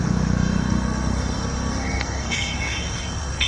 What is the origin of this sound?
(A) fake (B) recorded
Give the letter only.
A